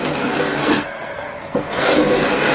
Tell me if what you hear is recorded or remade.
remade